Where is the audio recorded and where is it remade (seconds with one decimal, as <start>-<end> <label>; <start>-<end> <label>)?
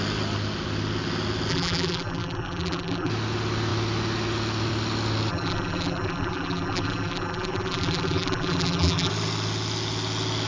0.0-1.5 recorded; 1.5-3.1 remade; 3.1-5.3 recorded; 5.3-9.1 remade; 9.1-10.5 recorded